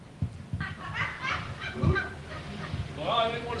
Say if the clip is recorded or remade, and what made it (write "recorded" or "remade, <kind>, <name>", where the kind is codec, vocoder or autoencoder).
recorded